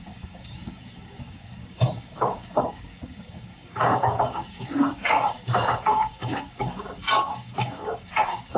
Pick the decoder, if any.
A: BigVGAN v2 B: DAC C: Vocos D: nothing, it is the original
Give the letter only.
B